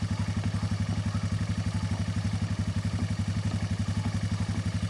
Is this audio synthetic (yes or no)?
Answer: no